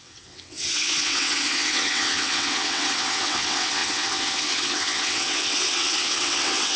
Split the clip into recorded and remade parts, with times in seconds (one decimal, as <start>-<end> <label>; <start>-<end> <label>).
0.0-6.8 remade